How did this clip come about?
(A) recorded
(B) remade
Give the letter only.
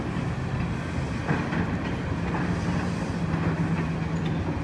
A